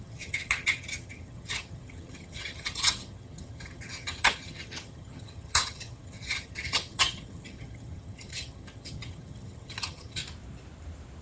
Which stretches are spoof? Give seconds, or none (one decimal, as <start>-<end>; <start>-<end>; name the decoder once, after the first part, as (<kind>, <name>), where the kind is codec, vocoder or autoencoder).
0.0-10.2 (vocoder, HiFi-GAN)